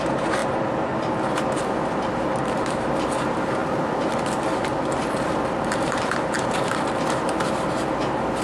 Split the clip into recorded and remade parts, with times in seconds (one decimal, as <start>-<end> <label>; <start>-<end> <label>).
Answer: 0.0-0.4 recorded; 0.4-2.9 remade; 2.9-3.6 recorded; 3.6-6.4 remade; 6.4-8.4 recorded